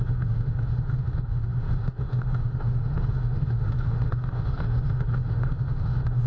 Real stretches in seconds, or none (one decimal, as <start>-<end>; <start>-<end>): none